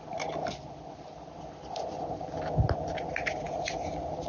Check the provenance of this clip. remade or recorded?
recorded